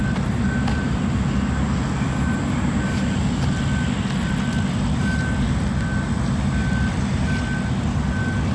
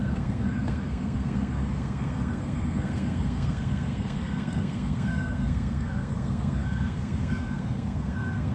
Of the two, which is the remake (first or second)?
second